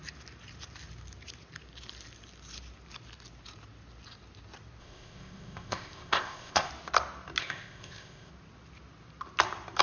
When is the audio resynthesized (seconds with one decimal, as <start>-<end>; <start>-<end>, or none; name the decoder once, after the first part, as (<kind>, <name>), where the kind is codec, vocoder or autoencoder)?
4.8-6.7 (codec, ZipCodec); 7.4-8.3